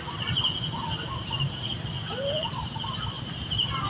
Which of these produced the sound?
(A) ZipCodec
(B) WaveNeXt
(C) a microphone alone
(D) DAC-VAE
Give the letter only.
C